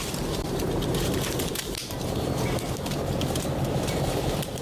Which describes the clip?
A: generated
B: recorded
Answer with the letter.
A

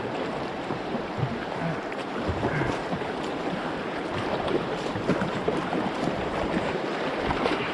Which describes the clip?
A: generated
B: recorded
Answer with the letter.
A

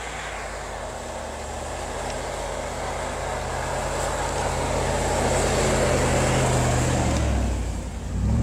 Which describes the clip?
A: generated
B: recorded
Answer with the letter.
B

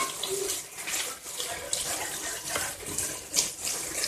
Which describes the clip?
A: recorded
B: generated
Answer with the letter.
A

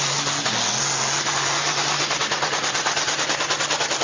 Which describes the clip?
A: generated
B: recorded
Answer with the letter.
B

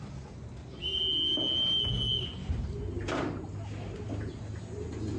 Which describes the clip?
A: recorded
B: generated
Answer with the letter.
A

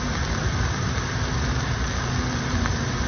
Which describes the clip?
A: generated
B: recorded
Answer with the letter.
B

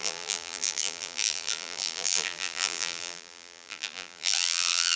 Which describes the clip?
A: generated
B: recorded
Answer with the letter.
A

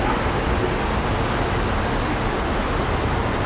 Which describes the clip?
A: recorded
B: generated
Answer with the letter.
A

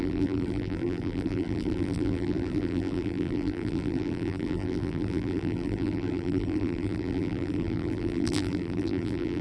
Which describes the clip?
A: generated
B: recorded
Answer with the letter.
A